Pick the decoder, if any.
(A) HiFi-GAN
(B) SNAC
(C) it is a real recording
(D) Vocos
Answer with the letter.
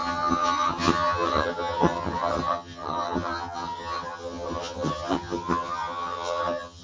A